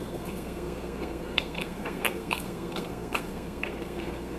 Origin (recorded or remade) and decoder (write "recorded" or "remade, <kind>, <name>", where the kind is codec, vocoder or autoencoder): remade, codec, SNAC